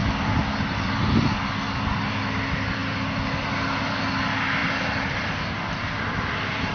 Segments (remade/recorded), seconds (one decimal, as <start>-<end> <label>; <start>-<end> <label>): 0.0-4.6 recorded; 4.6-5.1 remade; 5.1-6.7 recorded